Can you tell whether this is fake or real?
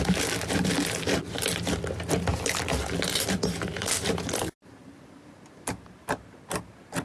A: real